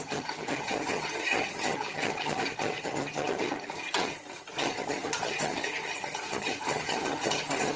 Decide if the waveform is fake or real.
fake